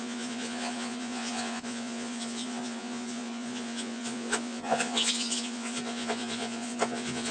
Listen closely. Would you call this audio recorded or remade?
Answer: remade